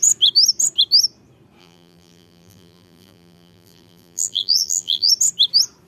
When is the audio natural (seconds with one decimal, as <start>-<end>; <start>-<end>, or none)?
0.0-1.6; 5.1-5.9